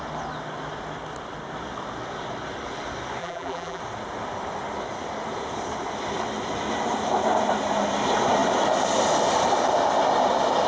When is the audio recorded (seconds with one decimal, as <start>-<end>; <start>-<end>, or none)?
0.0-3.2; 3.8-10.7